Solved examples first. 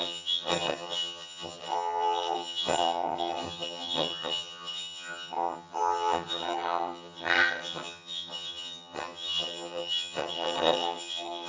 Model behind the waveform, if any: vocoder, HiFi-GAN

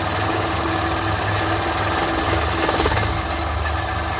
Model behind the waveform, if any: none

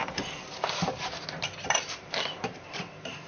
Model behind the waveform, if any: vocoder, BigVGAN v2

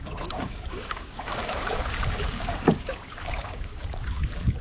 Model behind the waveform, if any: codec, DAC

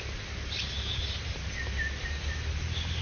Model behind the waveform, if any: none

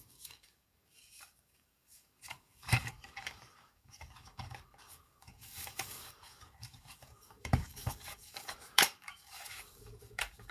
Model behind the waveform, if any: codec, DAC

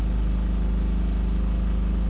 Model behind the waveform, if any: none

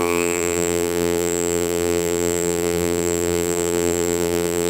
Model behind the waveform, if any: vocoder, BigVGAN v2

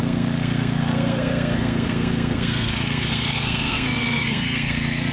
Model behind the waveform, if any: codec, SNAC